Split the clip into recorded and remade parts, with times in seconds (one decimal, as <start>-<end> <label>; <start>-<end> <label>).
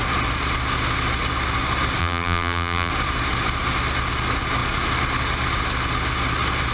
0.0-2.0 recorded; 2.0-2.9 remade; 2.9-6.7 recorded